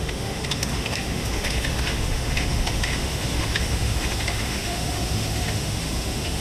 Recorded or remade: remade